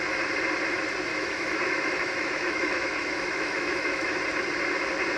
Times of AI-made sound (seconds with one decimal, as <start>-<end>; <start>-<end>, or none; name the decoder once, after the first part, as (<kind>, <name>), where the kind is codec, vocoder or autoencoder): 1.1-4.2 (autoencoder, DAC-VAE)